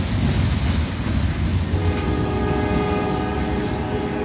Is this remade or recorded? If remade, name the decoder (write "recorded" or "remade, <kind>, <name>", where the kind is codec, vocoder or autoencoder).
recorded